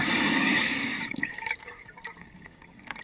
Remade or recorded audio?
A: remade